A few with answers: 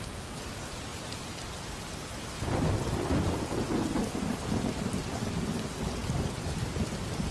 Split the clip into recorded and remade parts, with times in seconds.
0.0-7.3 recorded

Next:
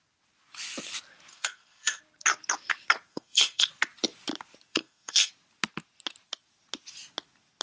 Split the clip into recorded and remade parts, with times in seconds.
0.0-1.3 recorded; 1.3-2.0 remade; 2.0-3.1 recorded; 3.1-3.7 remade; 3.7-4.7 recorded; 4.7-5.3 remade; 5.3-7.6 recorded

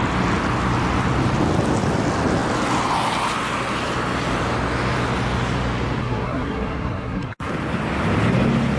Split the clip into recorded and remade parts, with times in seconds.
0.0-6.0 recorded; 6.0-7.5 remade; 7.5-8.8 recorded

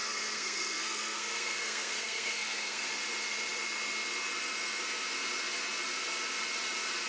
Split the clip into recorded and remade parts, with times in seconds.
0.0-2.9 remade; 2.9-7.1 recorded

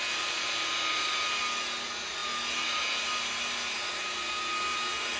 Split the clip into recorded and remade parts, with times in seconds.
0.0-5.2 recorded

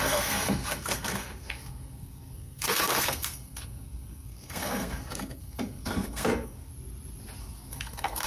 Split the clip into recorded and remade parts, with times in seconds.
0.0-6.7 remade; 6.7-7.4 recorded; 7.4-8.3 remade

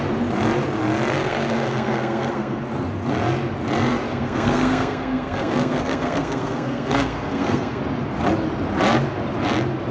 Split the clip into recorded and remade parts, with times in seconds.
0.0-1.1 recorded; 1.1-2.6 remade; 2.6-4.1 recorded; 4.1-7.8 remade; 7.8-9.9 recorded